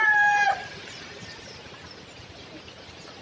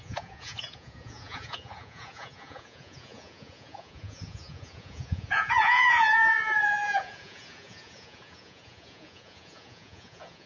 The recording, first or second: first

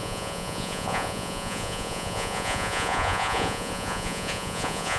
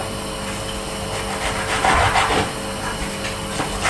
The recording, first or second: second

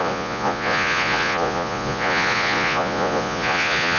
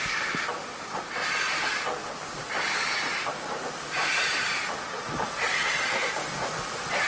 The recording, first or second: second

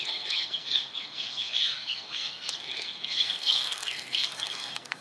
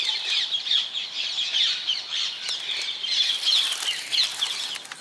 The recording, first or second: second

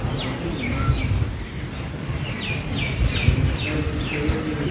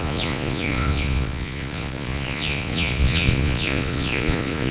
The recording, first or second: first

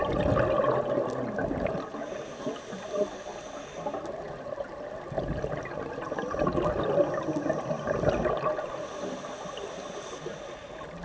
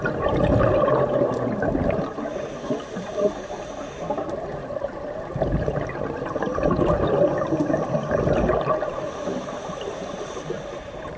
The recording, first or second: first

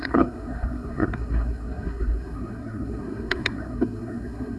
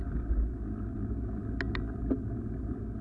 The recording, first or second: second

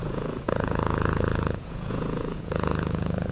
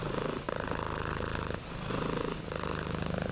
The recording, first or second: second